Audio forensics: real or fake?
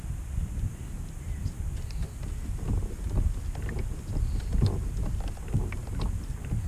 real